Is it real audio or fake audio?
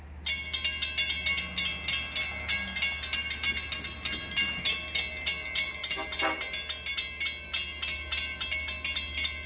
real